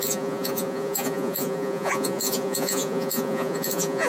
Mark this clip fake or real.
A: fake